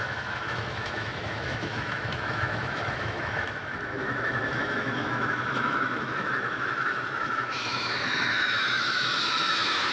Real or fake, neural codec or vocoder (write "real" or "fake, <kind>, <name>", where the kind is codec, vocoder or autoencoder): fake, autoencoder, DAC-VAE